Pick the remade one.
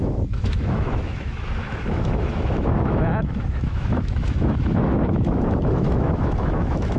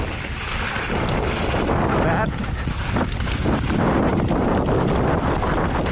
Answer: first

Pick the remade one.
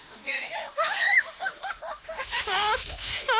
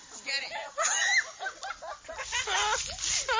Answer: first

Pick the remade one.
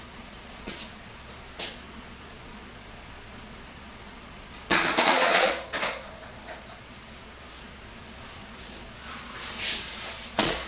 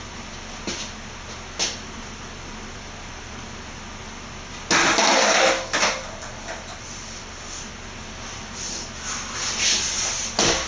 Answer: first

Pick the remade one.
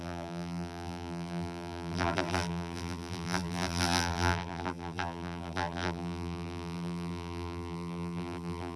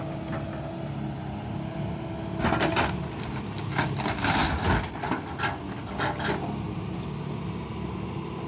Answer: first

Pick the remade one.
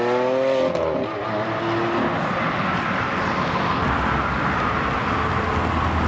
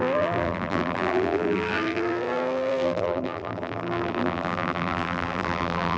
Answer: second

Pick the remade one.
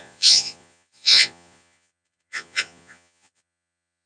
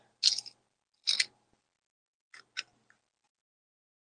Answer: first